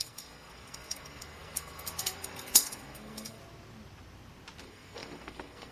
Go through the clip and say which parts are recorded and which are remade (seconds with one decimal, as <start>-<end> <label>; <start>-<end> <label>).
0.0-3.4 remade; 3.4-4.6 recorded; 4.6-5.7 remade